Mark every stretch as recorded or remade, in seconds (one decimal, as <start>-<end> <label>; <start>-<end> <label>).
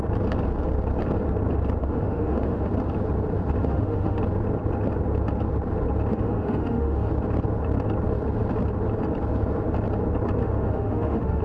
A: 0.0-1.8 recorded; 1.8-2.7 remade; 2.7-3.6 recorded; 3.6-4.2 remade; 4.2-6.1 recorded; 6.1-7.1 remade; 7.1-10.4 recorded; 10.4-11.4 remade